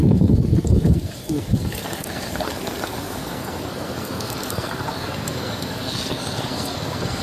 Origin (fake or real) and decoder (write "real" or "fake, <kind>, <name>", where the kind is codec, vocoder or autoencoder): fake, codec, SNAC